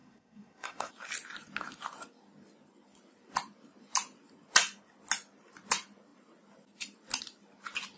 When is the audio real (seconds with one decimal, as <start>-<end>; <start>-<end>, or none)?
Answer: 0.9-8.0